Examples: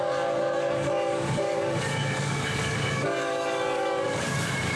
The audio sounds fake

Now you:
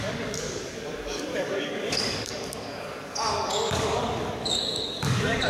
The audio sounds fake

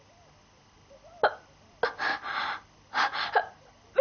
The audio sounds real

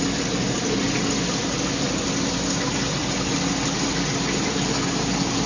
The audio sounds real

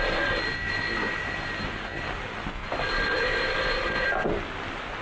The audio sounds real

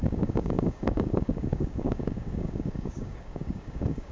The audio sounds fake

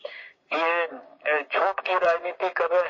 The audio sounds fake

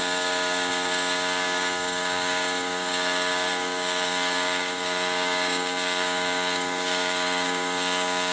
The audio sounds fake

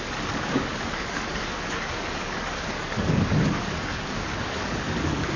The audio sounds fake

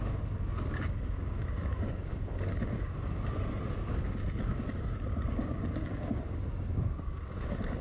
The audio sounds fake